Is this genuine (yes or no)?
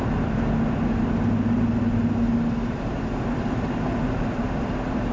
yes